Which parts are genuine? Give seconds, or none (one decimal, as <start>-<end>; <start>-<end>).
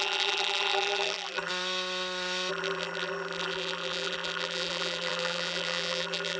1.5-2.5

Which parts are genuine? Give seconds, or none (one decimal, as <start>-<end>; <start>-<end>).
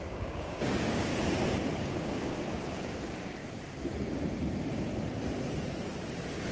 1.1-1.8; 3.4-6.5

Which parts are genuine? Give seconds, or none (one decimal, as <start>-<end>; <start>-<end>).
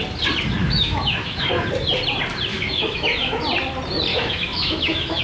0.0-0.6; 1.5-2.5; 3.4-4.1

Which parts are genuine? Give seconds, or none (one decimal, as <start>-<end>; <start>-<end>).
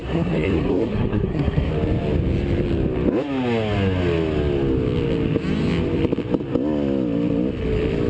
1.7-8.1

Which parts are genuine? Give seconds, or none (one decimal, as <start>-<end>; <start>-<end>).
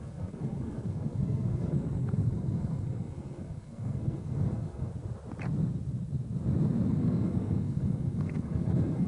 4.9-6.9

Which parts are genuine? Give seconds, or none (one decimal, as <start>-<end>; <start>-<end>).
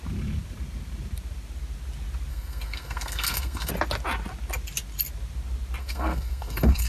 0.0-2.3; 3.7-5.8